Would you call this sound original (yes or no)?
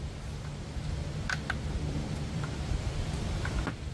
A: no